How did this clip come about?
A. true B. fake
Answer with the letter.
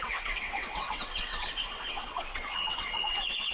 B